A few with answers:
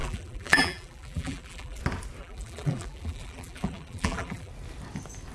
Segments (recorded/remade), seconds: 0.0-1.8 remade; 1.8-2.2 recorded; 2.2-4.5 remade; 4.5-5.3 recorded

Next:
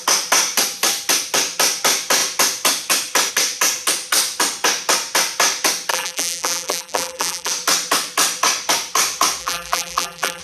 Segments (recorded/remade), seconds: 0.0-5.9 recorded; 5.9-7.5 remade; 7.5-9.4 recorded; 9.4-10.4 remade

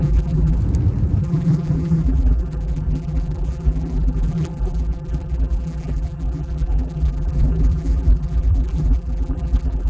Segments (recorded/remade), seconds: 0.0-0.6 remade; 0.6-1.2 recorded; 1.2-9.9 remade

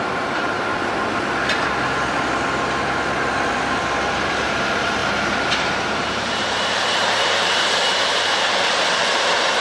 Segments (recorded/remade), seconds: 0.0-0.7 remade; 0.7-4.3 recorded; 4.3-9.6 remade

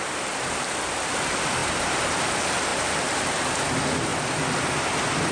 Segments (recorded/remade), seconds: 0.0-1.6 recorded; 1.6-2.3 remade; 2.3-2.7 recorded; 2.7-3.3 remade; 3.3-5.3 recorded